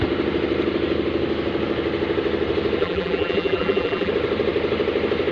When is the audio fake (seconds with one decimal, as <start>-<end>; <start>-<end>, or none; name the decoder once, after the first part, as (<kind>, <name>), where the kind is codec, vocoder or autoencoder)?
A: 2.8-4.1 (vocoder, BigVGAN v2)